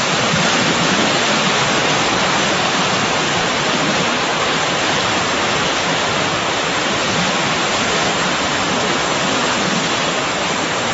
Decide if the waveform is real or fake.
fake